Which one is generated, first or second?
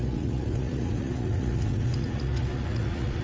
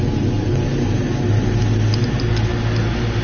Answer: first